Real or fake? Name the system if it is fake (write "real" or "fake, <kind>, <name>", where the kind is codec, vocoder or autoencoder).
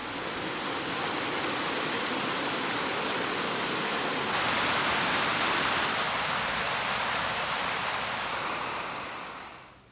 real